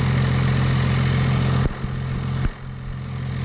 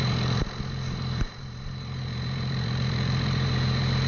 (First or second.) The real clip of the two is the first